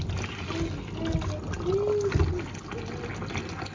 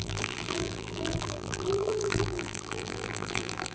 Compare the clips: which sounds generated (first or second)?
second